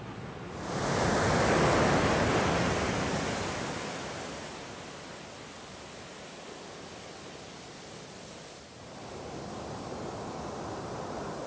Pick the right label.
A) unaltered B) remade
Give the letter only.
A